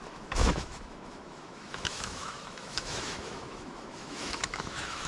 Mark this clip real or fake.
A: fake